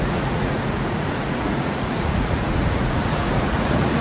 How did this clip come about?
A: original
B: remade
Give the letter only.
B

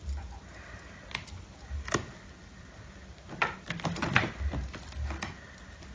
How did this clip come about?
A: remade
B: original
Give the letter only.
B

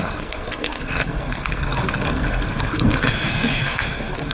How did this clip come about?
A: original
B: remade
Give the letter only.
B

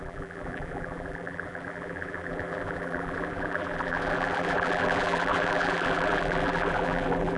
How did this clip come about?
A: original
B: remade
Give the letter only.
B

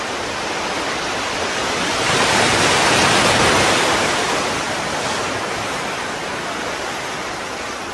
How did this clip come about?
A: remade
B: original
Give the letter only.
B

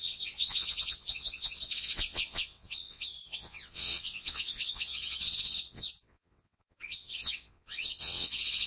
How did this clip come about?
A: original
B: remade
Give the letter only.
B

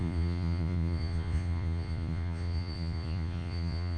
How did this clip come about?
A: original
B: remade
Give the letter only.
B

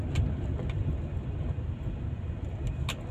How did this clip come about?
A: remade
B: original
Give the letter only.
B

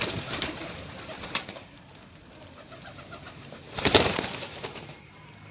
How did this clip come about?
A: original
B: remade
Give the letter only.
B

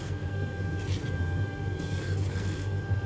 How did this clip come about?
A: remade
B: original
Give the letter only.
A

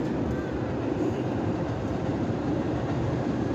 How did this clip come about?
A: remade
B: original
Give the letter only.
B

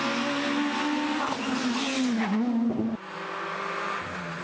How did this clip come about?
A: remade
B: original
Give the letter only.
B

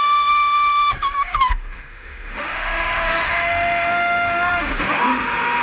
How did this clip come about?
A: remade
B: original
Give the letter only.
A